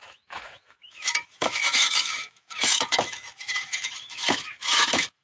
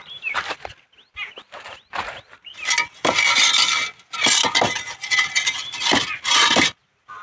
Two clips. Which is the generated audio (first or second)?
first